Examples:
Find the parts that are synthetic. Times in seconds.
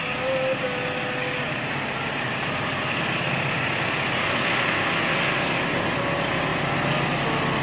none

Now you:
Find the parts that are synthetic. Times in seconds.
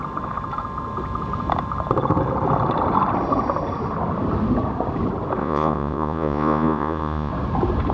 5.4-7.3 (vocoder, Vocos)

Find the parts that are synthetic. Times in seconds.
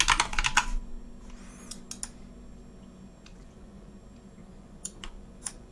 3.3-3.9 (vocoder, Vocos); 4.4-5.7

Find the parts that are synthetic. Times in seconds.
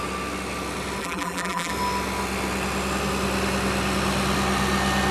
1.0-1.7 (vocoder, BigVGAN v2)